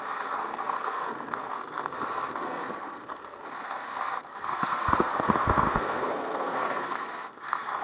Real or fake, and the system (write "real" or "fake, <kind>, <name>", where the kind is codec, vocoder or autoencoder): fake, codec, SNAC